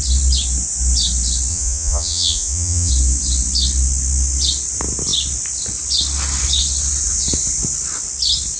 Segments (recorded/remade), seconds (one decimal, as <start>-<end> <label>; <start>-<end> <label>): 0.0-1.5 recorded; 1.5-2.9 remade; 2.9-8.6 recorded